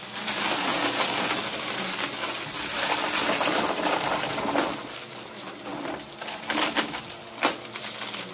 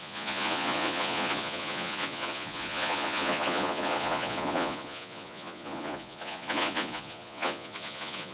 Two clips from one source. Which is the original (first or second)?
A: first